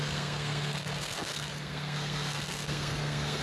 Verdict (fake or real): fake